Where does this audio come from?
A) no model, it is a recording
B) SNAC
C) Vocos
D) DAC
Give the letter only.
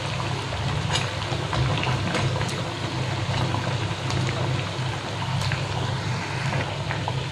A